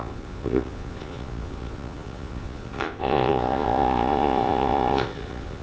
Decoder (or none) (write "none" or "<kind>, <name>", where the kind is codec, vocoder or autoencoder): vocoder, Vocos